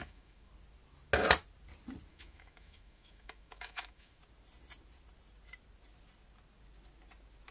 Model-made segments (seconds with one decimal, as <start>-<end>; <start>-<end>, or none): 0.0-0.5; 2.1-4.2

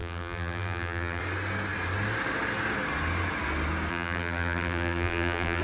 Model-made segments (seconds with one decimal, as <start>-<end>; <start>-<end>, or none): 0.0-1.2; 3.9-5.6